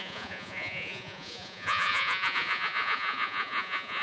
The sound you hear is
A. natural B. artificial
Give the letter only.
B